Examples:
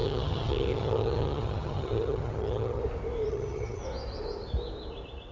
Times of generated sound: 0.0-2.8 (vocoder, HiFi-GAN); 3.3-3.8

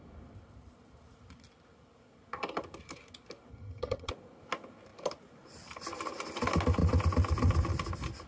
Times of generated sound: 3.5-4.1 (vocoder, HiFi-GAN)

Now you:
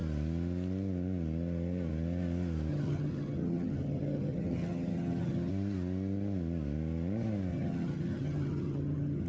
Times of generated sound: 2.7-5.5 (vocoder, HiFi-GAN); 7.5-9.3

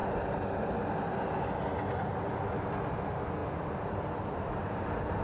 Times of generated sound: none

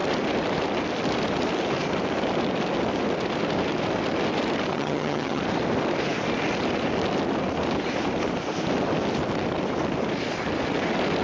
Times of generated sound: 4.7-5.4 (vocoder, HiFi-GAN)

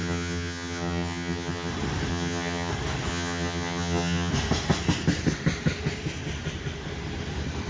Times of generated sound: 0.0-1.7 (vocoder, HiFi-GAN); 2.1-2.7; 3.1-4.3

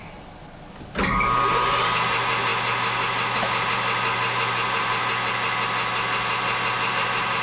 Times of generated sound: none

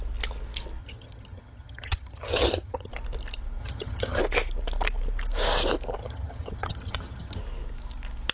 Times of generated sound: 0.8-2.9 (vocoder, HiFi-GAN); 3.6-4.2; 6.0-7.4